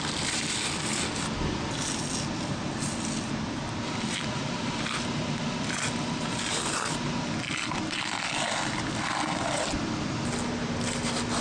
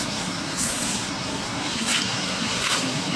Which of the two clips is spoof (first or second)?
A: second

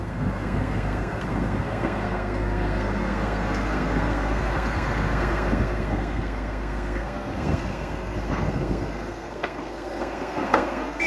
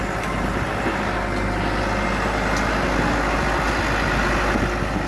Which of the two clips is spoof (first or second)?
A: first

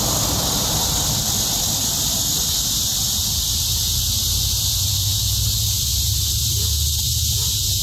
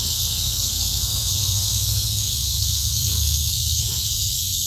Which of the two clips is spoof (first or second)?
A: second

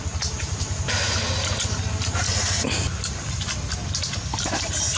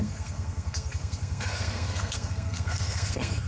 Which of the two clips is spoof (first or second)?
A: second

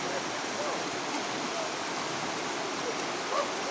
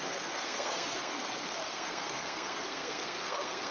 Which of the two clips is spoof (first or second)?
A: second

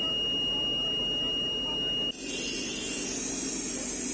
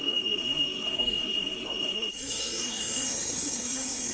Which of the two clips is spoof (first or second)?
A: second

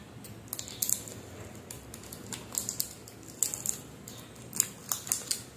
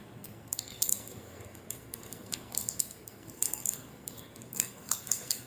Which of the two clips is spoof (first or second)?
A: second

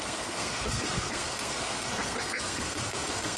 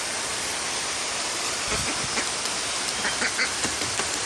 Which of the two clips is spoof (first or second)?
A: first